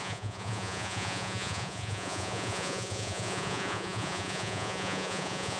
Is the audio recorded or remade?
remade